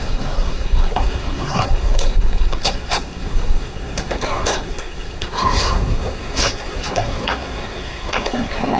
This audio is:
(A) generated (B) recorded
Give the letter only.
A